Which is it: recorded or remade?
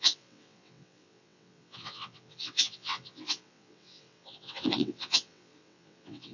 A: remade